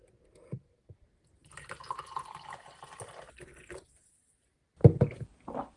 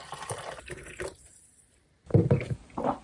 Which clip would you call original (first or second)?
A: first